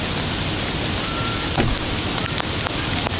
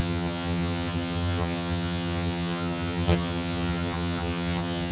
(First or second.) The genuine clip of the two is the first